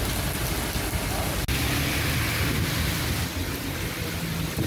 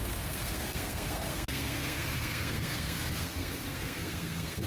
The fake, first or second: second